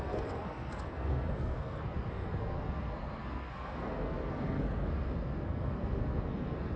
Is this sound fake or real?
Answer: fake